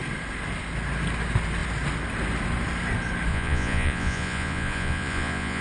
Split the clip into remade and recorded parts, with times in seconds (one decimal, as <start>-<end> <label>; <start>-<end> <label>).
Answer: 0.0-3.3 recorded; 3.3-5.6 remade